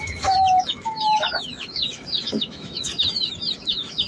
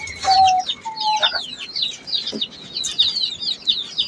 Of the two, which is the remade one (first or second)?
first